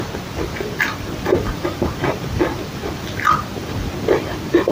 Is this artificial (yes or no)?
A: no